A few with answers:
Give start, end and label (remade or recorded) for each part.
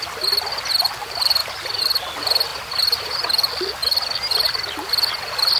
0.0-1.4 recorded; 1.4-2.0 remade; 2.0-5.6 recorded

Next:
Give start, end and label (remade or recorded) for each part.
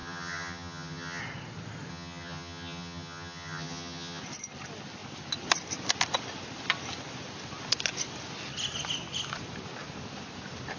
0.0-1.2 remade; 1.2-1.9 recorded; 1.9-4.2 remade; 4.2-10.8 recorded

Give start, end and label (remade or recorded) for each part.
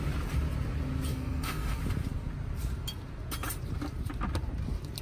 0.0-1.1 recorded; 1.1-1.8 remade; 1.8-5.0 recorded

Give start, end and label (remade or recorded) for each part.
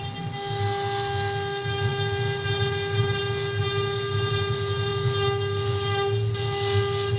0.0-7.2 recorded